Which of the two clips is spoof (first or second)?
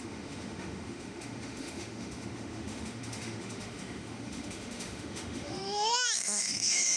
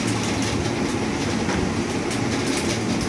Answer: first